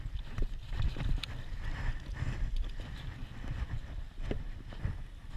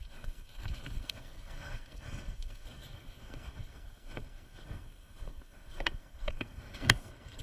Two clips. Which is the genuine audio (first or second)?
first